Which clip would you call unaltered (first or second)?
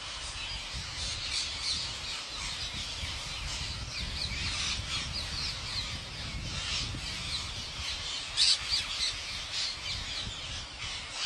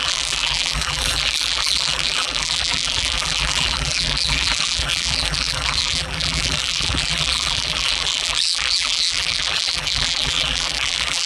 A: first